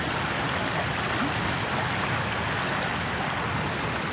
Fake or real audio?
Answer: real